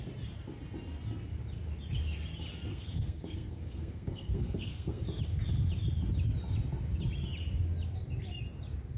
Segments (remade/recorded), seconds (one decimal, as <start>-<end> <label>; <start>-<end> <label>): 0.0-2.7 recorded; 2.7-5.0 remade; 5.0-9.0 recorded

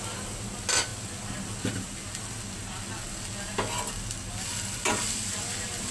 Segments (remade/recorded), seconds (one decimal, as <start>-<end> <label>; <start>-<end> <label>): 0.0-5.9 recorded

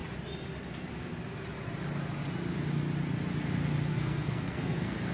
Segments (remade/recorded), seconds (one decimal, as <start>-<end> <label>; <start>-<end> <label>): 0.0-3.9 recorded; 3.9-5.1 remade

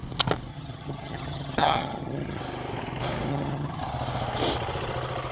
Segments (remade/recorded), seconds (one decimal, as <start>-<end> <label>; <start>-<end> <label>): 0.0-0.5 recorded; 0.5-2.4 remade; 2.4-3.3 recorded; 3.3-3.8 remade; 3.8-5.3 recorded